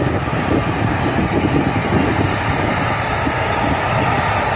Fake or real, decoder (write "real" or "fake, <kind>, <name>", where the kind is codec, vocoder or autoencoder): real